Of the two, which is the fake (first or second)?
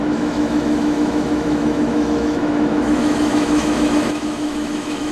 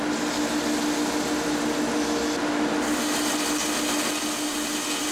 first